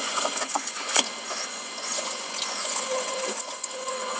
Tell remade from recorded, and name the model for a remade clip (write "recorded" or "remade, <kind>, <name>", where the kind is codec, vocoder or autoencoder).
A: remade, vocoder, Vocos